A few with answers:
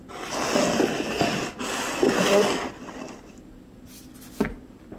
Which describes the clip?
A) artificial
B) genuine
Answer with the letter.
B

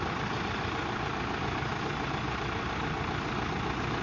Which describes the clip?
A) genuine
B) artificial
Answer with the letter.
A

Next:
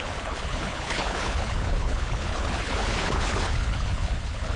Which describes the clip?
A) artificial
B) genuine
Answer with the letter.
A